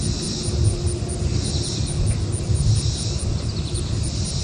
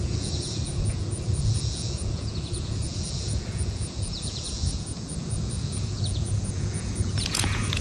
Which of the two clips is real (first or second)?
first